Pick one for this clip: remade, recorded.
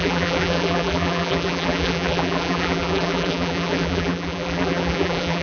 remade